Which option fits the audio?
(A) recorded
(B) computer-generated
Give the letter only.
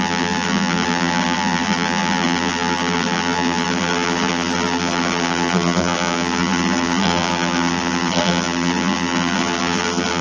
B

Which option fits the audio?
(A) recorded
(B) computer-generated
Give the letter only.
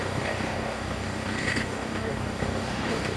B